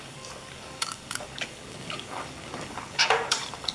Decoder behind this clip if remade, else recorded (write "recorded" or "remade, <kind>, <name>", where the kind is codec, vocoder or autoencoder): remade, codec, DAC